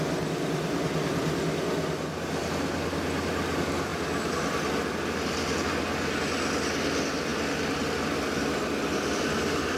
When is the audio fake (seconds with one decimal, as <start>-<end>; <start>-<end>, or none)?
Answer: none